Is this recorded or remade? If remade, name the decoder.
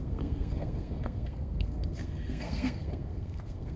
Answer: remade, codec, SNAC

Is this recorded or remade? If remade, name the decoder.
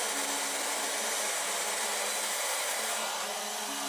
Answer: recorded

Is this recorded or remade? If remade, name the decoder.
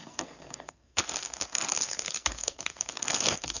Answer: remade, codec, SNAC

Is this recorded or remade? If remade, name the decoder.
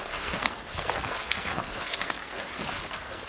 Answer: remade, codec, SNAC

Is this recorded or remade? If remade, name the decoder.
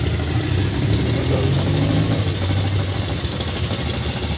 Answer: recorded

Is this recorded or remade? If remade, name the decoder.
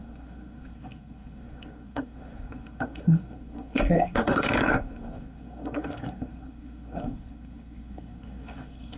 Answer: remade, codec, SNAC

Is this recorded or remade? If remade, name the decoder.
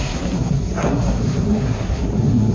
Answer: remade, codec, SNAC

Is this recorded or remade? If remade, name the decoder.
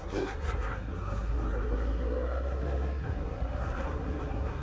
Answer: remade, codec, SNAC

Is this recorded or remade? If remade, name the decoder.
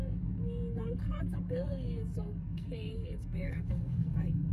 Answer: remade, codec, SNAC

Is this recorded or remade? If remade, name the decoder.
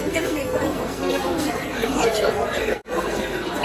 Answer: remade, codec, SNAC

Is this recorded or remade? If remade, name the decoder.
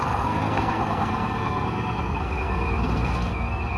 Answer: remade, codec, SNAC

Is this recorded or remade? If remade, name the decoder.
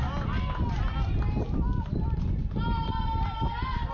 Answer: recorded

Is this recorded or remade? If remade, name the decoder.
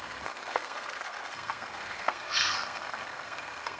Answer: remade, codec, SNAC